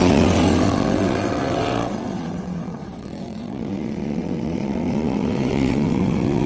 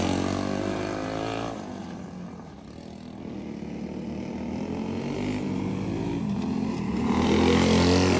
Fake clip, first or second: first